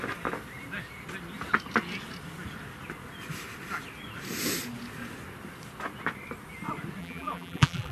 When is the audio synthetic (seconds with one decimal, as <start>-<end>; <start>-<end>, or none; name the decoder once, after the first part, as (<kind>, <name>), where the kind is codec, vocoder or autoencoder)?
7.0-7.9 (vocoder, BigVGAN v2)